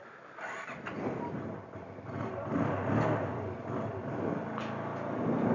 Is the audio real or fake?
real